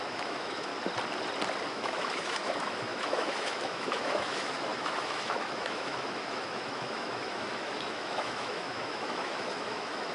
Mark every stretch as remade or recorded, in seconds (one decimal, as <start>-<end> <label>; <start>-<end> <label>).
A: 0.0-0.7 remade; 0.7-1.7 recorded; 1.7-10.1 remade